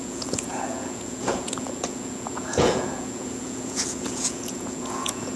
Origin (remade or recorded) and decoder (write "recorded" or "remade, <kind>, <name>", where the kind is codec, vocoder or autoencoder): remade, vocoder, Vocos